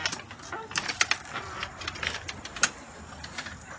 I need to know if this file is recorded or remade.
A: recorded